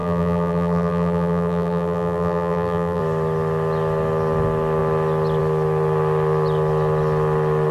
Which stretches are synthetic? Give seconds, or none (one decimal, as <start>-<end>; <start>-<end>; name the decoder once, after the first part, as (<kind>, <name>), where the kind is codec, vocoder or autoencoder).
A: 0.0-3.0 (vocoder, BigVGAN v2)